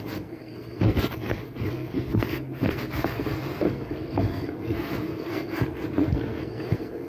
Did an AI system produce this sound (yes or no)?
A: yes